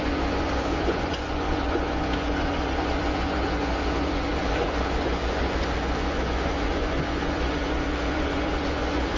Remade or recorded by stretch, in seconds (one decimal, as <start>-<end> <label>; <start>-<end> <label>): 0.0-9.2 remade